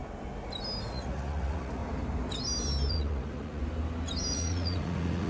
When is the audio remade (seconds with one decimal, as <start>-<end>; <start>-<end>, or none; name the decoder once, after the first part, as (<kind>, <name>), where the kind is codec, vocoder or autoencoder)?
0.9-1.8 (vocoder, Vocos); 2.9-3.6; 4.3-5.3